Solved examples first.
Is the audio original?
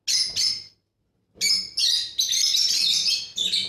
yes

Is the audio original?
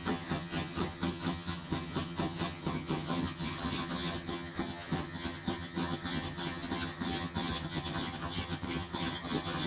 no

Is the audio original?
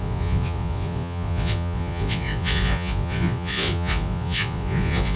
no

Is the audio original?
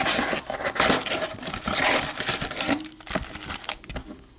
yes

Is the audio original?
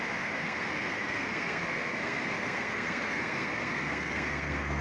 no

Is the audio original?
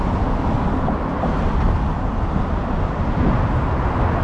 yes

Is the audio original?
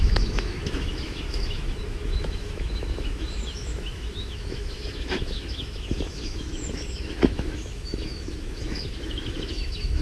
no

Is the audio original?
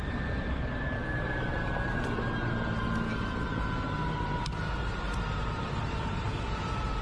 no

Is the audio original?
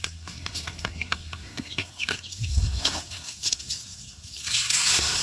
no